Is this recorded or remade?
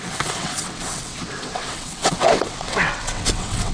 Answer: remade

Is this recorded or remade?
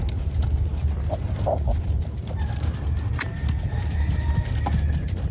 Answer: recorded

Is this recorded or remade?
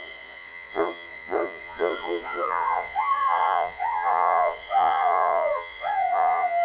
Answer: remade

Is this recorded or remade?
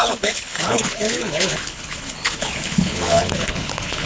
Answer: remade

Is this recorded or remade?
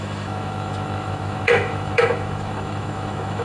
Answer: remade